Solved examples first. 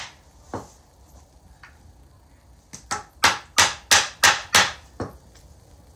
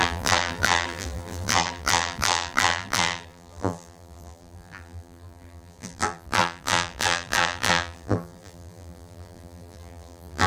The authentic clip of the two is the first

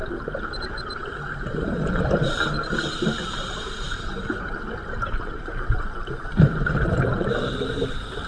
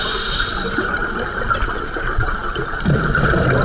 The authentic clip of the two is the second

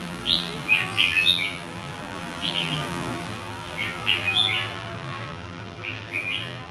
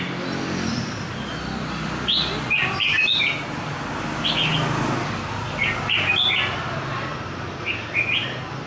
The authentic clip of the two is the second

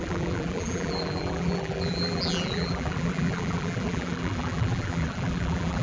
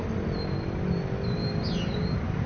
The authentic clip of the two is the second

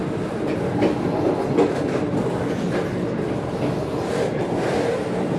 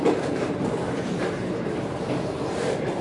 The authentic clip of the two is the first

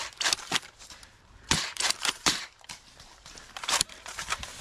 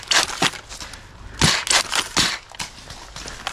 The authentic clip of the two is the second